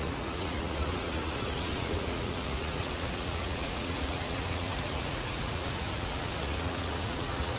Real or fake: fake